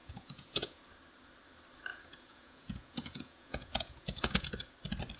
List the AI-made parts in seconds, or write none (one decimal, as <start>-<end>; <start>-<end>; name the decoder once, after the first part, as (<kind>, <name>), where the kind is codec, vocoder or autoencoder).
0.0-0.8 (vocoder, Vocos); 1.9-4.5